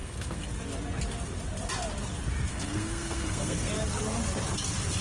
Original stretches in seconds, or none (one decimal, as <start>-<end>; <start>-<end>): 0.5-2.5; 3.7-5.0